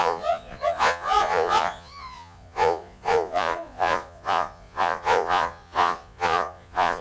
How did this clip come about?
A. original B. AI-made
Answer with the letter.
B